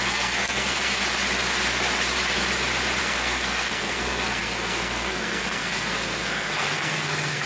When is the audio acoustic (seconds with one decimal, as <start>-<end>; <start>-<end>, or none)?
1.0-3.0

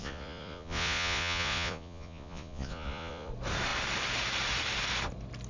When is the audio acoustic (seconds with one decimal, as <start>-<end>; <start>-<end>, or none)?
3.3-5.5

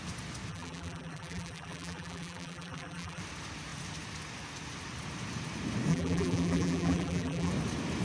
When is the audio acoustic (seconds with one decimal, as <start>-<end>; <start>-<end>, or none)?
0.0-0.5; 3.2-5.9; 7.5-8.0

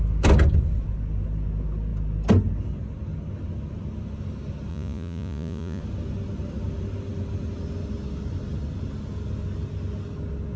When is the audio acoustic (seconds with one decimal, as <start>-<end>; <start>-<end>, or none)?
0.0-4.7; 5.8-10.6

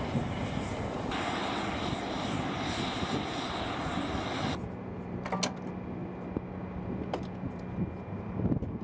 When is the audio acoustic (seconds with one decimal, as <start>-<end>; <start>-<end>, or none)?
0.0-8.8

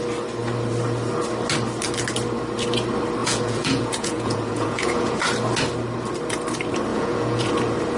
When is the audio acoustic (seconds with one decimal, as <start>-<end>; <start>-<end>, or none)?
0.0-3.2; 5.2-6.9; 7.5-8.0